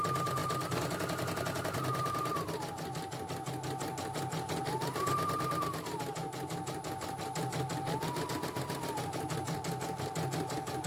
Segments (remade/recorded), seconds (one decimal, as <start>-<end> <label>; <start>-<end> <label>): 0.0-10.9 recorded